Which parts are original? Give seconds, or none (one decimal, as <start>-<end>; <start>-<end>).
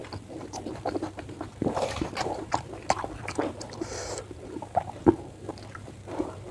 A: none